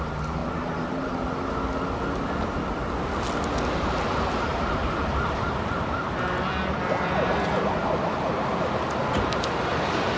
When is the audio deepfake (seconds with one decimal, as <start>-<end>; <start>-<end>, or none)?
0.4-1.1; 4.5-5.9